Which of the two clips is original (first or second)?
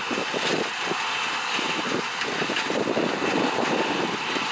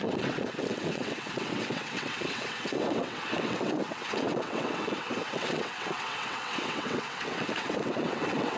first